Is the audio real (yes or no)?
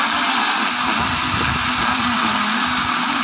yes